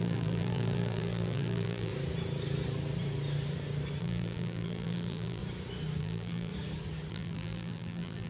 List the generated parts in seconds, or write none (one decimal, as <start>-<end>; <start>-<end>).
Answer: 0.0-1.9; 4.0-5.4; 6.0-6.5; 7.1-8.3